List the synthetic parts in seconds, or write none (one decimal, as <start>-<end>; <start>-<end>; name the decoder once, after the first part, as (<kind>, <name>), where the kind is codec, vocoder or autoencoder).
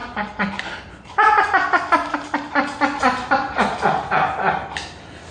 none